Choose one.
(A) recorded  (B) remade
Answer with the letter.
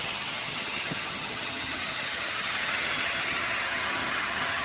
B